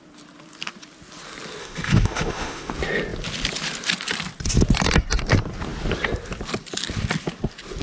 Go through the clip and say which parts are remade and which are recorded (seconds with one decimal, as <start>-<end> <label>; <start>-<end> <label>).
0.0-1.6 recorded; 1.6-2.7 remade; 2.7-7.8 recorded